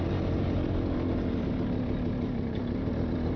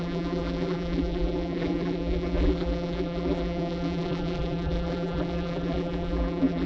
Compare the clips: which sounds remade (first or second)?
second